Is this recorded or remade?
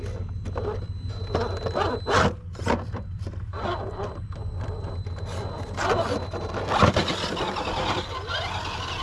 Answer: recorded